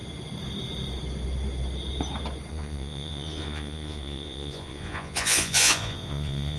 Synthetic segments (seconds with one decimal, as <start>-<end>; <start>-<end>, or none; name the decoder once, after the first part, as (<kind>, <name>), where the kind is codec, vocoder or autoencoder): 2.5-6.6 (vocoder, Vocos)